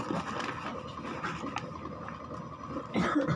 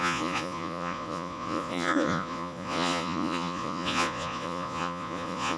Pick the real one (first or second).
first